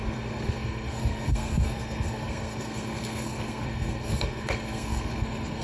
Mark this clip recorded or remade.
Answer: remade